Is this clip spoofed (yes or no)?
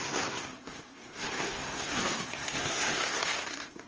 yes